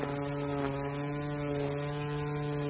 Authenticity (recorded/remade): recorded